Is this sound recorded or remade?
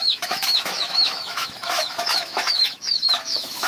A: remade